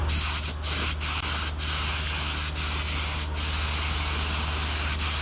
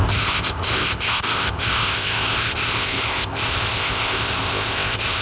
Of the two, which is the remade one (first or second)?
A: second